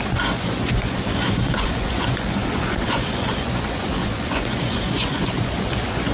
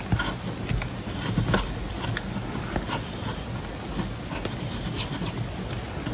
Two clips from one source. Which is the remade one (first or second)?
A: first